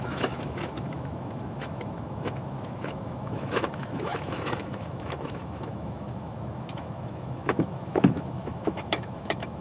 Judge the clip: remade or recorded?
remade